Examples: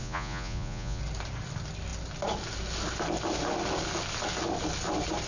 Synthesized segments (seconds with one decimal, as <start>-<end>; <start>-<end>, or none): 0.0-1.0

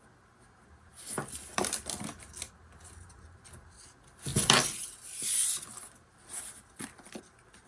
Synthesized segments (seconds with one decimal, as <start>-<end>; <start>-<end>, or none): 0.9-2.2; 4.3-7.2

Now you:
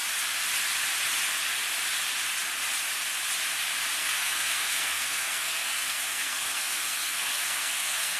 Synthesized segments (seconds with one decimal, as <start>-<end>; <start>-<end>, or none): 4.0-8.2